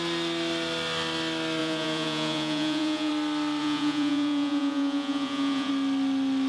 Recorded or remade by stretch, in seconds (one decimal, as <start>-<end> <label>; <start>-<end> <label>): 0.0-1.6 recorded; 1.6-3.1 remade; 3.1-3.6 recorded; 3.6-5.7 remade; 5.7-6.5 recorded